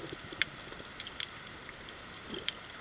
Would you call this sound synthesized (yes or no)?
no